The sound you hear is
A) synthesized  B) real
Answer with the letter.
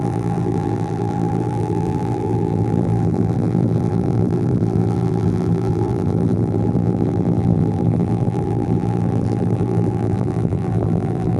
A